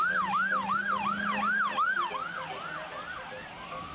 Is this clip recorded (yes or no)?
yes